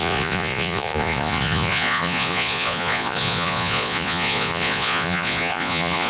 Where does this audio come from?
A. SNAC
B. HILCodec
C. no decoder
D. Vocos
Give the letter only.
D